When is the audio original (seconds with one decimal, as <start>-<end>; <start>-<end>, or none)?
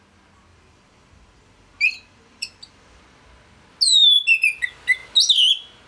0.0-0.5; 3.0-5.9